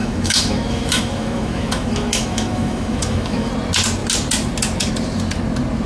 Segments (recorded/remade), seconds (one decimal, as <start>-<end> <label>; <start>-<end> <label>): 0.0-3.5 remade; 3.5-5.9 recorded